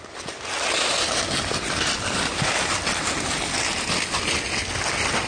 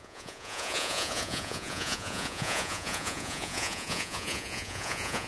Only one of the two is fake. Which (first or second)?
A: second